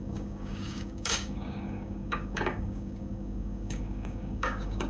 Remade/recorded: remade